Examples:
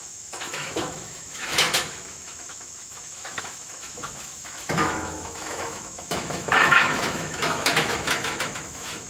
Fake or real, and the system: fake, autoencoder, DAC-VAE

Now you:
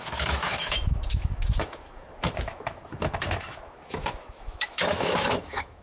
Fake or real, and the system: fake, autoencoder, DAC-VAE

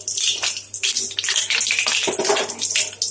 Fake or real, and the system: real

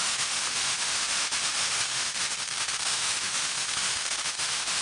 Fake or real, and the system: fake, autoencoder, DAC-VAE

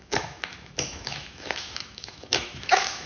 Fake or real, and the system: fake, autoencoder, DAC-VAE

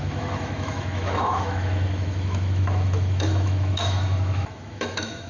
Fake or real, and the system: fake, autoencoder, DAC-VAE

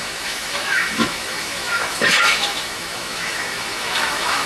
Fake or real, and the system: fake, autoencoder, DAC-VAE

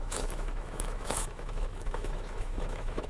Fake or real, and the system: fake, autoencoder, DAC-VAE